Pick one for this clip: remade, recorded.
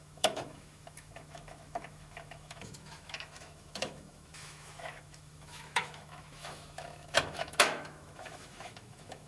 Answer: remade